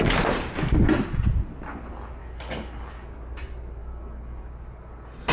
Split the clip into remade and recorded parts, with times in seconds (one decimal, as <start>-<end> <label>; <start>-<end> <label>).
0.0-2.2 recorded; 2.2-2.9 remade; 2.9-3.8 recorded; 3.8-4.5 remade; 4.5-5.3 recorded